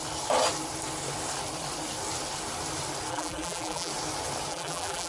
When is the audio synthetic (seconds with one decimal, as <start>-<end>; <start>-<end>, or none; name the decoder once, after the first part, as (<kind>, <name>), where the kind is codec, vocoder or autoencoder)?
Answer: 3.1-3.9 (vocoder, BigVGAN v2); 4.5-5.1

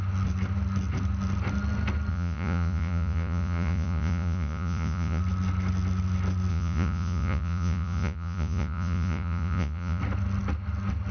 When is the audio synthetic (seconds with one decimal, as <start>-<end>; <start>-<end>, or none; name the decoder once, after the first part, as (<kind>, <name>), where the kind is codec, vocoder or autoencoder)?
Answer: 2.1-5.2 (vocoder, Vocos); 6.5-10.0

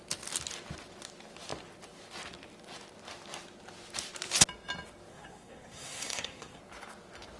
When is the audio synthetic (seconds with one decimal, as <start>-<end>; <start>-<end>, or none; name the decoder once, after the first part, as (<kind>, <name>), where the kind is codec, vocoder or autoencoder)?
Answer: 5.1-6.6 (codec, SNAC)

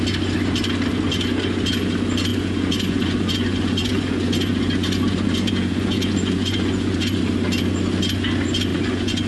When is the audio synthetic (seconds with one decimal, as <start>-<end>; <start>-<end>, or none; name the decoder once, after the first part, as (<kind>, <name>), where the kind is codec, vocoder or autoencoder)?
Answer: 2.3-7.2 (vocoder, Vocos); 8.7-9.3

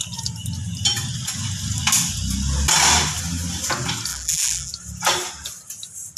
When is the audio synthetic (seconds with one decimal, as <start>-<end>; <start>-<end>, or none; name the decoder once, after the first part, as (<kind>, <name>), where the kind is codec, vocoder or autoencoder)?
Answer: 4.1-4.7 (vocoder, BigVGAN v2)

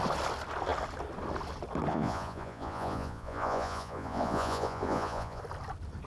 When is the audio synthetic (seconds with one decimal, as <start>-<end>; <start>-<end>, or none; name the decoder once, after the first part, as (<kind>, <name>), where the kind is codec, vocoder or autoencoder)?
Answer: 1.9-5.4 (vocoder, Vocos)

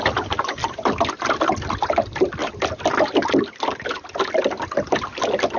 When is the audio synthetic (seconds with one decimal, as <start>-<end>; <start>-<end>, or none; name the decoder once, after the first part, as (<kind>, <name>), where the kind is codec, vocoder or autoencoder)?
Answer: none